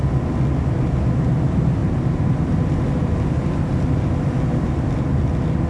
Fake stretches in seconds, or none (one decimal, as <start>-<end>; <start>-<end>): none